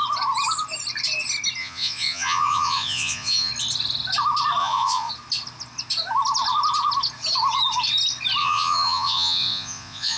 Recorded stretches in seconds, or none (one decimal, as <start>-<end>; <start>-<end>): 0.0-1.6; 3.5-4.6; 5.1-8.4